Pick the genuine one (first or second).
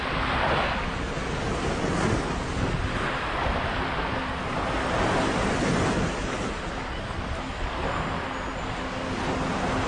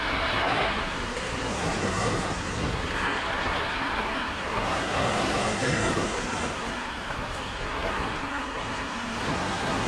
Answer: first